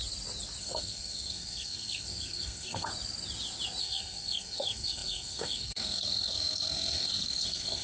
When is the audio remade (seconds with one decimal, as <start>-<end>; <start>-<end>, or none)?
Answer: 0.6-2.9; 3.8-7.8